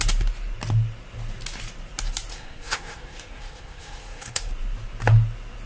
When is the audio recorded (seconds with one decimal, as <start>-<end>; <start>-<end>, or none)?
0.0-2.3; 4.5-5.7